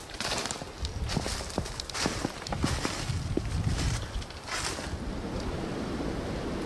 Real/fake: real